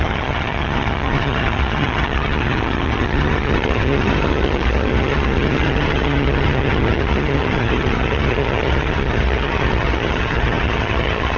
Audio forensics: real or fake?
fake